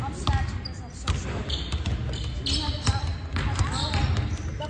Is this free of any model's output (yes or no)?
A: yes